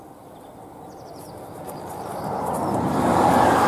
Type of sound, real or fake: real